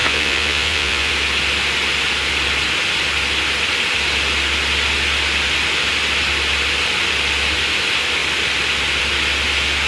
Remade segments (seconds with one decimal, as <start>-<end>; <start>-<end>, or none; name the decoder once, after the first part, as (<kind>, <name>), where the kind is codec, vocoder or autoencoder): 0.0-1.1 (vocoder, Vocos)